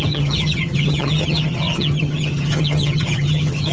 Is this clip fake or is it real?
fake